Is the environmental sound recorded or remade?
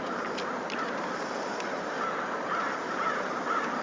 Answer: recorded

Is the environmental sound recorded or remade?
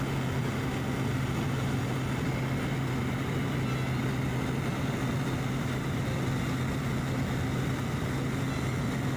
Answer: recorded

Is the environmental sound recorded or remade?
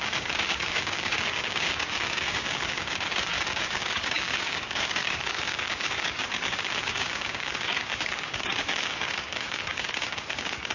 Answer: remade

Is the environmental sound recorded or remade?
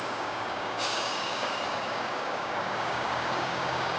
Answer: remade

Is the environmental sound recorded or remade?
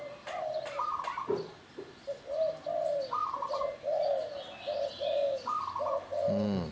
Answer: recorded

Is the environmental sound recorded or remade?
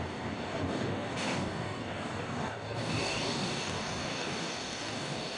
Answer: remade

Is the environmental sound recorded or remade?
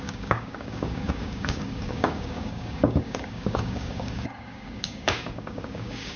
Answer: remade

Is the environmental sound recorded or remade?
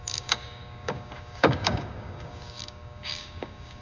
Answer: remade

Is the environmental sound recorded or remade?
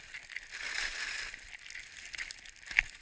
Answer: recorded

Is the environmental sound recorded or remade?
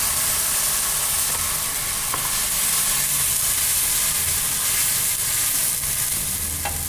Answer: recorded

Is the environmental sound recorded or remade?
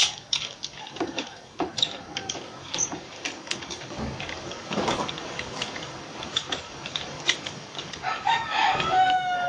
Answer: remade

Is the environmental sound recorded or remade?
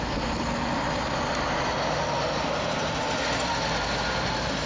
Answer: recorded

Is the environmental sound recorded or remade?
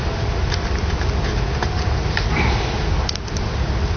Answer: recorded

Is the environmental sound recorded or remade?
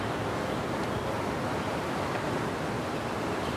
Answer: recorded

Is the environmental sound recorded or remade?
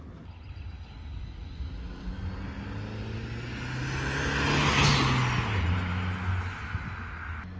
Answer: recorded